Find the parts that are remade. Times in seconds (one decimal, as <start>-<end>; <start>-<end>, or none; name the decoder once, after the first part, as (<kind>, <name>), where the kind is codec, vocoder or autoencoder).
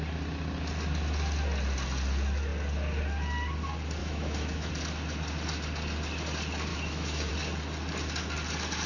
4.0-4.7 (autoencoder, DAC-VAE); 6.7-7.3